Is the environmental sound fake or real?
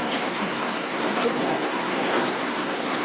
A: fake